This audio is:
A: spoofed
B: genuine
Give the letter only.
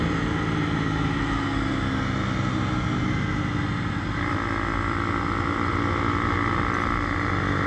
B